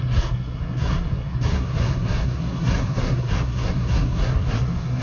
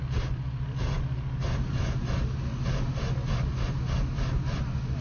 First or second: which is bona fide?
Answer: second